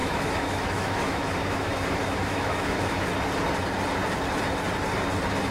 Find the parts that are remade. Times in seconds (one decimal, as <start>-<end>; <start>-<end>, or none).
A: 0.0-3.1